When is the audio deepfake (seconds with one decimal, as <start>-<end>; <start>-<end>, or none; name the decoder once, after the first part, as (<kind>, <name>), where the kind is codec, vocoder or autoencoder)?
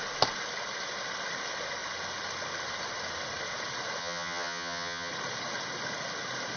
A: 4.0-5.1 (vocoder, HiFi-GAN)